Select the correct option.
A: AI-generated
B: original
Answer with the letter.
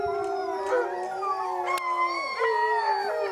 B